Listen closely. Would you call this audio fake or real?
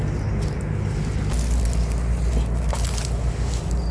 real